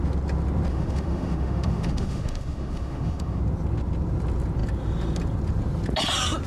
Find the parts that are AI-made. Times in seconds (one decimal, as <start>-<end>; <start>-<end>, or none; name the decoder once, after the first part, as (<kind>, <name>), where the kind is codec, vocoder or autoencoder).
0.7-3.4 (autoencoder, DAC-VAE)